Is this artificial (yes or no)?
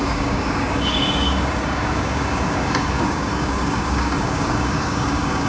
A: yes